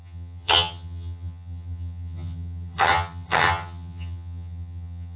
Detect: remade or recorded remade